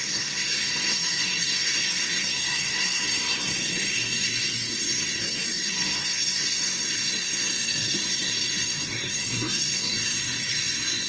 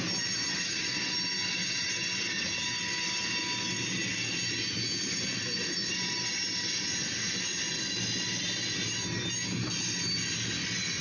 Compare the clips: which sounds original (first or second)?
second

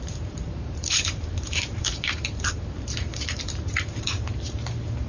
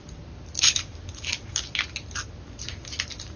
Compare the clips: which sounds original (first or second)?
second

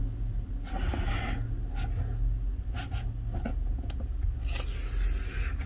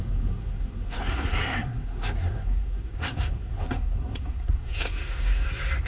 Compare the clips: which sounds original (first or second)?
first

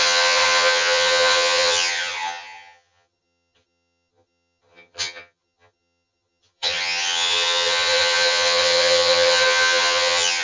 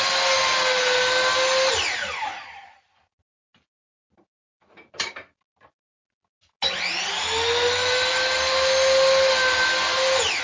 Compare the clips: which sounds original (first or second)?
second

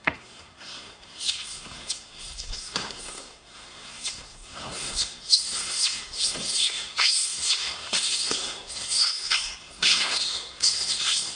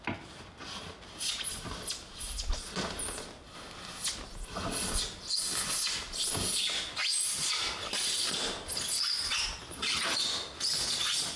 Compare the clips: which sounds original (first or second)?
second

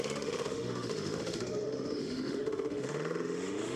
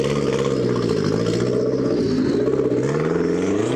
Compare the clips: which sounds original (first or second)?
second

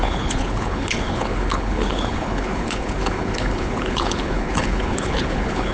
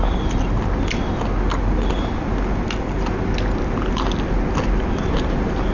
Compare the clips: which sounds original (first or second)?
second